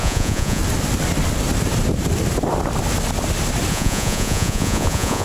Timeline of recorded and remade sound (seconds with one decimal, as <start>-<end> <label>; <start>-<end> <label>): 0.0-0.6 remade; 0.6-3.7 recorded; 3.7-5.2 remade